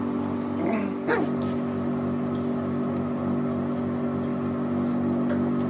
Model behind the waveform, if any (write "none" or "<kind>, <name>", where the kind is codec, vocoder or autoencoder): none